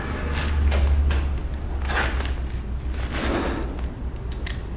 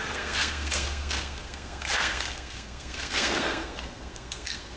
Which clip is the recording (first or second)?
first